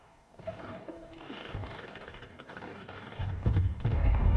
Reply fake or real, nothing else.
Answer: fake